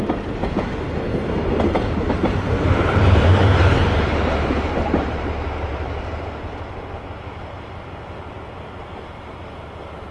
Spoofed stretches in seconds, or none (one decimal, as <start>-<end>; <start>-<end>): 1.1-6.2

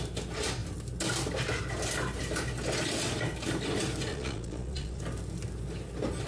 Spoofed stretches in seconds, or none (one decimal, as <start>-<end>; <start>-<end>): 4.1-5.0

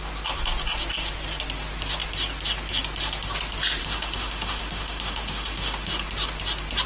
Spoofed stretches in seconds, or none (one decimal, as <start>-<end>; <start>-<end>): 3.8-5.9

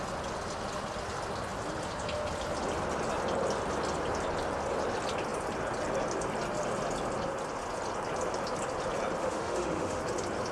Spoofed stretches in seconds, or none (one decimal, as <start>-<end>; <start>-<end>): 9.2-10.0

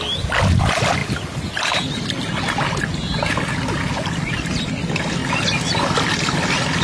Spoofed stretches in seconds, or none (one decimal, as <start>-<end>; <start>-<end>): none